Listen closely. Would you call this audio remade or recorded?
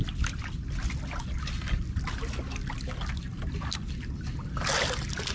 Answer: recorded